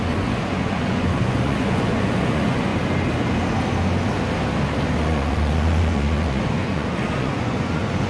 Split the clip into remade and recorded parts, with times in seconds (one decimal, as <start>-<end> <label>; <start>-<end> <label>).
0.0-2.7 remade; 2.7-5.0 recorded; 5.0-8.1 remade